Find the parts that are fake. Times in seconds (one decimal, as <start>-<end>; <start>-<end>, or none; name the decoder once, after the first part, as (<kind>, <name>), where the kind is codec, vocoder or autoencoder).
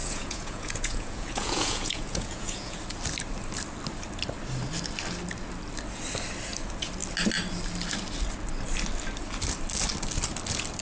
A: 0.0-2.8 (vocoder, Vocos)